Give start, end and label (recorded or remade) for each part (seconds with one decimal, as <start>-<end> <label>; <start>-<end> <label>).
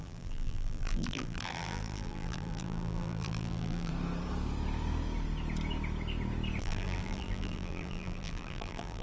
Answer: 0.0-3.9 remade; 3.9-6.6 recorded; 6.6-9.0 remade